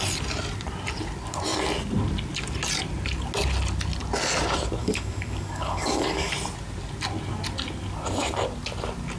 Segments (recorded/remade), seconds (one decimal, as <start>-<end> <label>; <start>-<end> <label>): 0.0-4.8 recorded; 4.8-6.3 remade; 6.3-9.2 recorded